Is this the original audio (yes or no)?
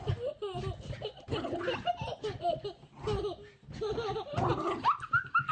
yes